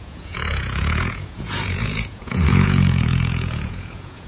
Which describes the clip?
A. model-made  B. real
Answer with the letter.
A